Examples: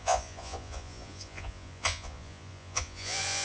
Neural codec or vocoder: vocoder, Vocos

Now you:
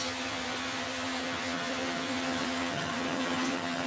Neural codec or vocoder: vocoder, HiFi-GAN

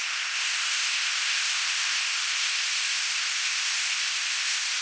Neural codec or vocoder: codec, ZipCodec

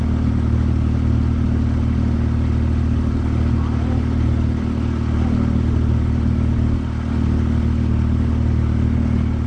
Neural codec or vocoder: none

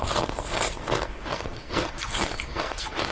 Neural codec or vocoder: codec, SNAC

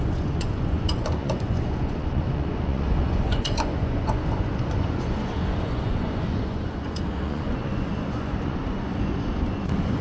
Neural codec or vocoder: vocoder, Vocos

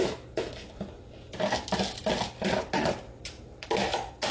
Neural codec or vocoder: none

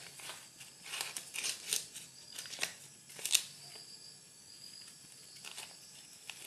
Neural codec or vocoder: none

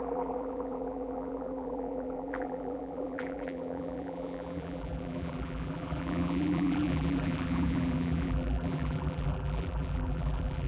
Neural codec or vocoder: vocoder, BigVGAN v2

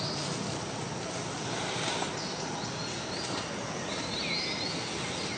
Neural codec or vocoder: none